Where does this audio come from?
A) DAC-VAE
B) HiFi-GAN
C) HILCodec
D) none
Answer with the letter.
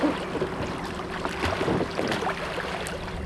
D